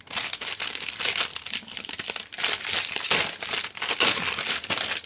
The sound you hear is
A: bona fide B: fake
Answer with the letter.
A